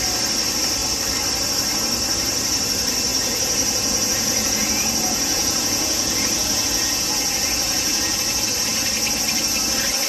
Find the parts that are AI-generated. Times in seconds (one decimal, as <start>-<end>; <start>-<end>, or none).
3.1-8.2